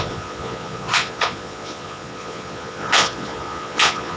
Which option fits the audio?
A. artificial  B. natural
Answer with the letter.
A